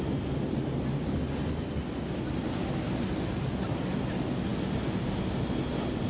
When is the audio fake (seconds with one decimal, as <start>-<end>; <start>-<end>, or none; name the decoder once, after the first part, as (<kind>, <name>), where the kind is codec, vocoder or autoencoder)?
none